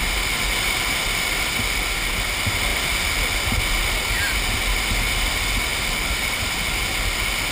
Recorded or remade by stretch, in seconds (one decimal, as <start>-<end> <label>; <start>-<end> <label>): 0.0-7.5 recorded